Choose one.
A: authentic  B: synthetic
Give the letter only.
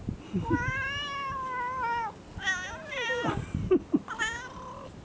A